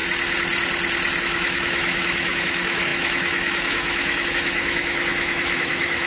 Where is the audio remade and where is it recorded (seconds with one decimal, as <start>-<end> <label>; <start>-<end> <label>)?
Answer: 0.0-1.2 recorded; 1.2-6.1 remade

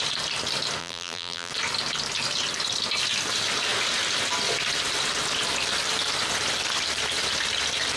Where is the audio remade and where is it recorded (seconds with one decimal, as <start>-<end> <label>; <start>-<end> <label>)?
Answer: 0.0-0.8 recorded; 0.8-1.5 remade; 1.5-8.0 recorded

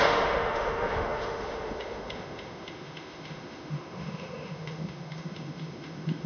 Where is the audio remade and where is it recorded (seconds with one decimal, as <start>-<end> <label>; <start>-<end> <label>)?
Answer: 0.0-6.3 remade

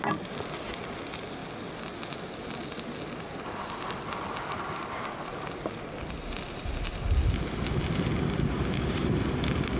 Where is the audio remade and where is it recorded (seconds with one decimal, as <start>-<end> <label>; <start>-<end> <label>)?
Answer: 0.0-9.8 recorded

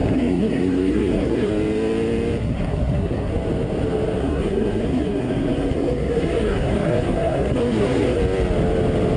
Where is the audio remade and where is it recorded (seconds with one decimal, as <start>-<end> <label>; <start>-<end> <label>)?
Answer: 0.0-1.5 remade; 1.5-2.4 recorded; 2.4-3.3 remade; 3.3-4.2 recorded; 4.2-8.2 remade; 8.2-9.2 recorded

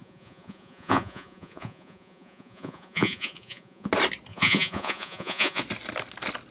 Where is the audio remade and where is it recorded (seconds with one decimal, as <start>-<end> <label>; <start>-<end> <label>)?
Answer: 0.0-3.9 remade; 3.9-4.3 recorded; 4.3-5.6 remade; 5.6-6.5 recorded

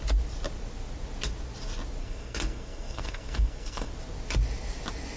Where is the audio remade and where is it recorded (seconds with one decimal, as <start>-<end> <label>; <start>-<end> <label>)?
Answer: 0.0-2.0 recorded; 2.0-3.9 remade; 3.9-5.2 recorded